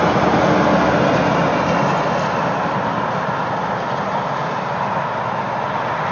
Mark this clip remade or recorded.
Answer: recorded